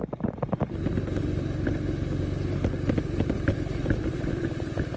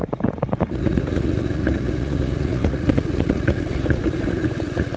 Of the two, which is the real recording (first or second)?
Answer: first